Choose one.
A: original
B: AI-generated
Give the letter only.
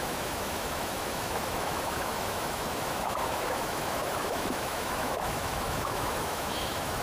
B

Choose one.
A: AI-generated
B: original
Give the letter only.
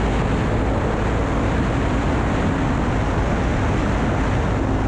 B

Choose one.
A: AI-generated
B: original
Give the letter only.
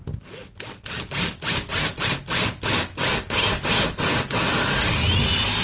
B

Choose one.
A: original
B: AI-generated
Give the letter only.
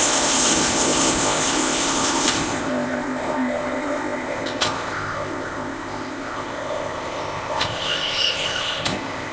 B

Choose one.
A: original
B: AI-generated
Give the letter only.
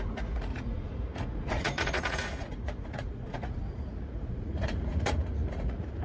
B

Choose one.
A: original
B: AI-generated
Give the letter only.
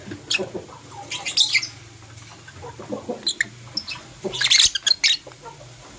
A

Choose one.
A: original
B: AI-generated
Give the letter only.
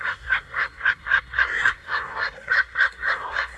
B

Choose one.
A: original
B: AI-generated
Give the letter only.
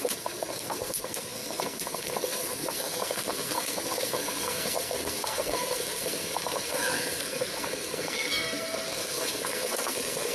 B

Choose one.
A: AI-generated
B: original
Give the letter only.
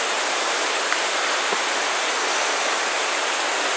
B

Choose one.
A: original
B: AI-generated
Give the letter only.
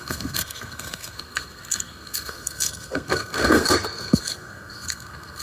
B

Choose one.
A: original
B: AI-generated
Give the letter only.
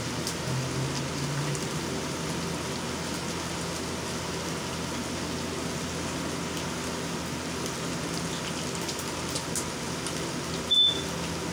A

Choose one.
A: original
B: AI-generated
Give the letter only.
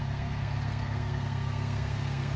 B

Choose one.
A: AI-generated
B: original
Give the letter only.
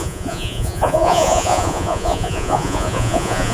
A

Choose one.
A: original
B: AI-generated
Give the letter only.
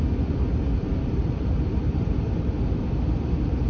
B